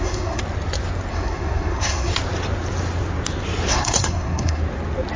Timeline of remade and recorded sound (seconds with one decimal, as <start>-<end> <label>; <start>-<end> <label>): 0.0-0.4 remade; 0.4-1.1 recorded; 1.1-2.1 remade; 2.1-3.7 recorded; 3.7-4.6 remade; 4.6-5.2 recorded